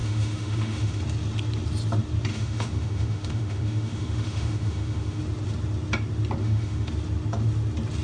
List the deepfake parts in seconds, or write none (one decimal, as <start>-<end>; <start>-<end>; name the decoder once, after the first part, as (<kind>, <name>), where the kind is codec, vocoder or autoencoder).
0.0-1.0 (autoencoder, DAC-VAE); 2.3-5.2; 6.4-6.9